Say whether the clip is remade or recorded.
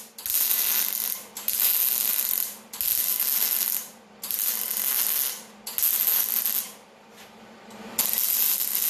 recorded